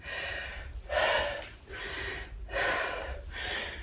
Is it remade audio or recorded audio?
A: recorded